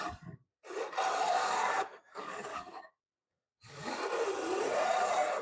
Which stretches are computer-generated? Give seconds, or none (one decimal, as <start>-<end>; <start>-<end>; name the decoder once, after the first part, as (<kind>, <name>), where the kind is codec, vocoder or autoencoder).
1.4-4.0 (codec, DAC)